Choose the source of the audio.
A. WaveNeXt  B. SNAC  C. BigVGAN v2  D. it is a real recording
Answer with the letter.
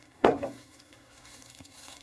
B